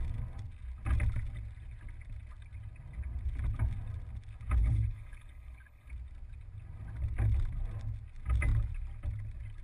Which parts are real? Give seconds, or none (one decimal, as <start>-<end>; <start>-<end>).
0.0-4.6; 5.9-9.6